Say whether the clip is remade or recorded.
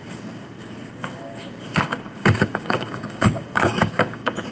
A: remade